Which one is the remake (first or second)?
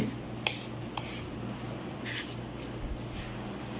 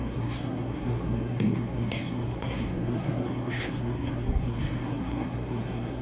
second